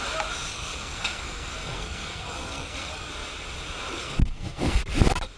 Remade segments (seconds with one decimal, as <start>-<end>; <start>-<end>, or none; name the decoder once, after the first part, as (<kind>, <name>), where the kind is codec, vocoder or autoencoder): 0.5-3.1 (codec, SNAC); 3.9-4.8